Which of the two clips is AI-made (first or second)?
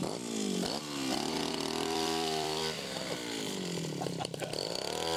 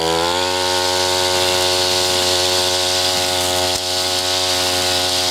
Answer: first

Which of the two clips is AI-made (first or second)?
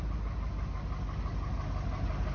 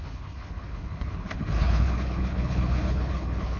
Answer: second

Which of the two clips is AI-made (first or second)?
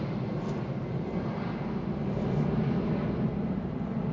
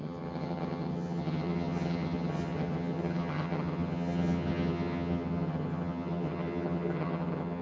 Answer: second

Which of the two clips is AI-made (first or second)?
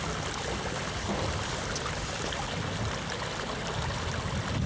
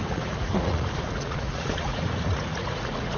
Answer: second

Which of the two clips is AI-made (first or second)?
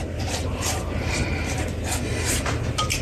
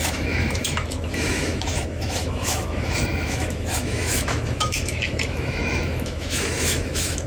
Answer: second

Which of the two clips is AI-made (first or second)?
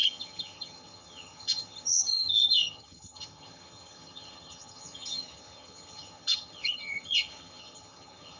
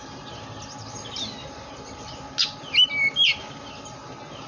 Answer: first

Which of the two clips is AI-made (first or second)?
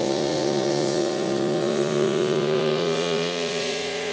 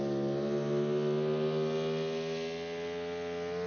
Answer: first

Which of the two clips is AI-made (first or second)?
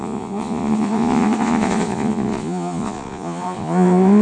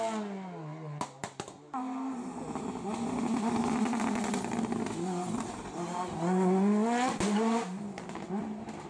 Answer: first